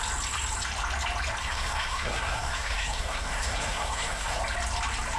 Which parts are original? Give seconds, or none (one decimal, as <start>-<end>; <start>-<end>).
0.0-1.4; 4.4-5.2